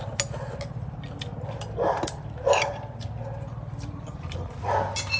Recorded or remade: recorded